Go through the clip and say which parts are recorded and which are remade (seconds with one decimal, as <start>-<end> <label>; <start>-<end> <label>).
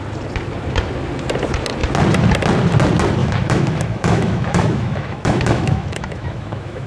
0.0-3.2 recorded; 3.2-6.9 remade